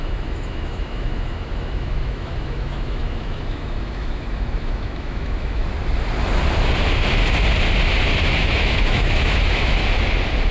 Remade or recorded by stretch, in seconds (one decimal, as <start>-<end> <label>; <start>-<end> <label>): 0.0-5.6 remade; 5.6-8.4 recorded; 8.4-9.8 remade; 9.8-10.5 recorded